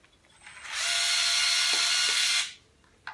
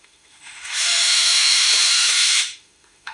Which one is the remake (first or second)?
second